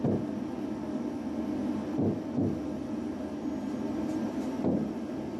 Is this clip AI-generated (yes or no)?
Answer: no